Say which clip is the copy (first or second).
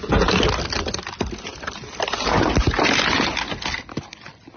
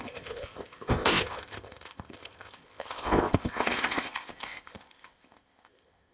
second